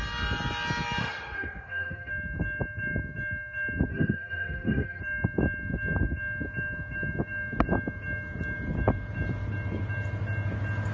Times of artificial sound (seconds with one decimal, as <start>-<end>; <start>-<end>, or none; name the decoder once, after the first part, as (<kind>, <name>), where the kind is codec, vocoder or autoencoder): 1.0-2.1 (autoencoder, DAC-VAE); 3.9-5.0